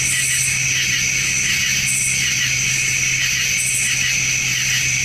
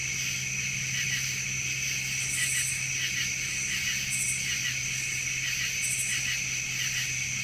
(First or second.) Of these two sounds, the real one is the first